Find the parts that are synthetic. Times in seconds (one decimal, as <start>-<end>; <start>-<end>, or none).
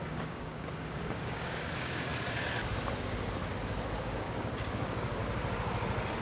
0.0-2.1; 4.0-5.2